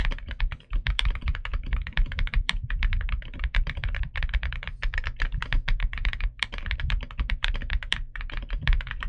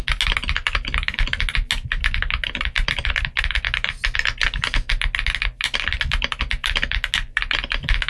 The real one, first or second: second